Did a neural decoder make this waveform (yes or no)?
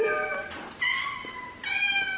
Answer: no